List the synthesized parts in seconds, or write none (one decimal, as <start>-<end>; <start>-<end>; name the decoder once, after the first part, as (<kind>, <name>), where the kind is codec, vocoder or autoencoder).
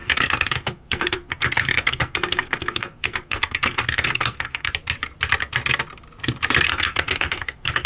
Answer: 0.0-4.7 (codec, SNAC); 6.7-7.9